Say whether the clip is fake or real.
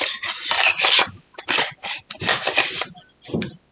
real